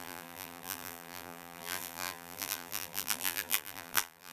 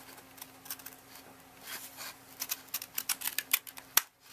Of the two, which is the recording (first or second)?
second